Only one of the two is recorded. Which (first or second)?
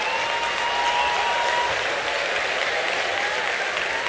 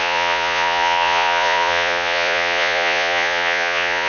first